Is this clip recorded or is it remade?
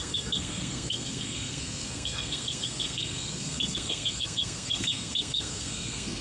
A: remade